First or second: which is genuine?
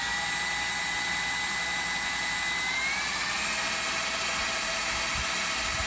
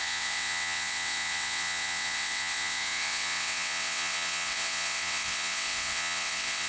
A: first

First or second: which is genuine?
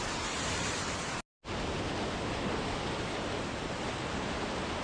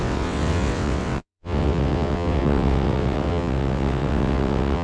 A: first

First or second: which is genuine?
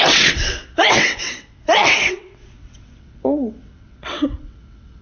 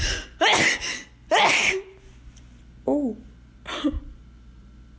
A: second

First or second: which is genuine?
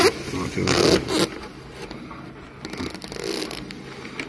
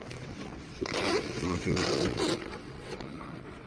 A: first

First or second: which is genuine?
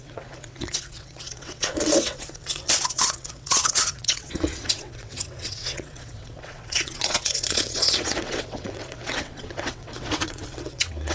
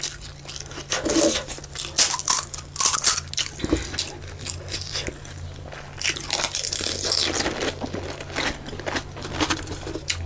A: second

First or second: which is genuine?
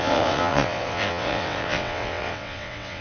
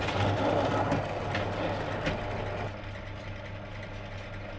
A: second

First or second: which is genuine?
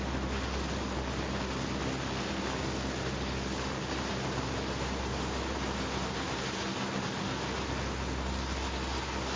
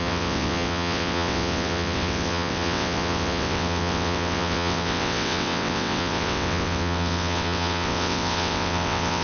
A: first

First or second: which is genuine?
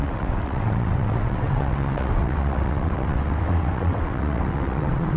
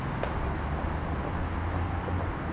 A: second